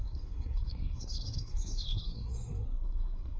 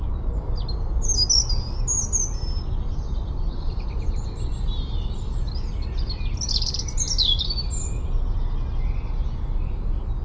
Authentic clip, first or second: second